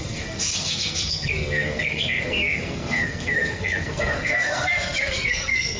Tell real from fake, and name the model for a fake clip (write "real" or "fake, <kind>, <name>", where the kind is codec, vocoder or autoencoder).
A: fake, codec, SNAC